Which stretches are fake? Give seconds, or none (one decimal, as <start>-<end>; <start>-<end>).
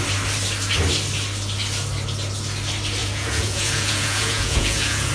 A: 3.0-5.1